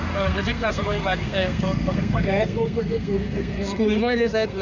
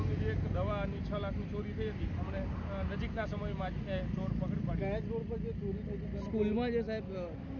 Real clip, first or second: second